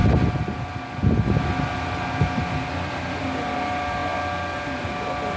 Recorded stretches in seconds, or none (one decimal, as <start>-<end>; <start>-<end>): 0.0-5.4